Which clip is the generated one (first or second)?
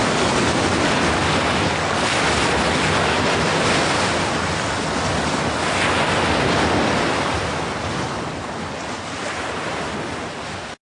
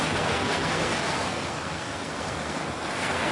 second